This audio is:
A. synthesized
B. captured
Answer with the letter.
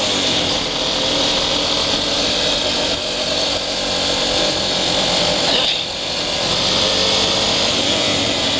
A